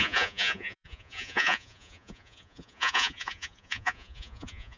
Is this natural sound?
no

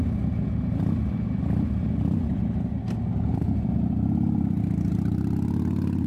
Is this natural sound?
yes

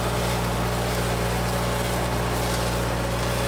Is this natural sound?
yes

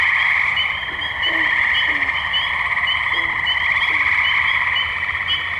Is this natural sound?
yes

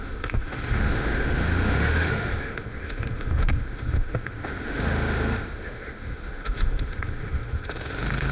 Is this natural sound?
no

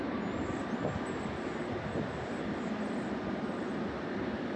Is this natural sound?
yes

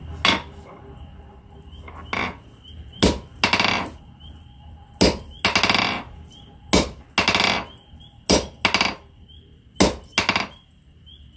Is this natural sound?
yes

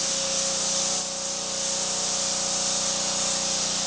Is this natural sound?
yes